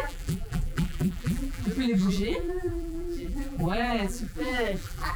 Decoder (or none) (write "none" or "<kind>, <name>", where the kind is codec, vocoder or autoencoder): vocoder, BigVGAN v2